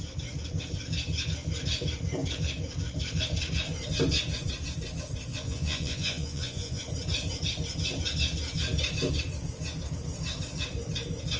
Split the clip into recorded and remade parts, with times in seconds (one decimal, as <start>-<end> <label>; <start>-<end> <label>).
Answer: 0.0-5.3 recorded; 5.3-6.8 remade; 6.8-11.4 recorded